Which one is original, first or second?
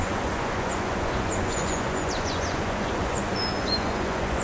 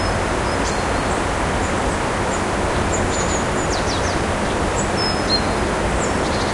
second